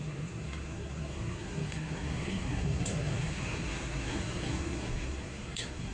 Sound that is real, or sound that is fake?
fake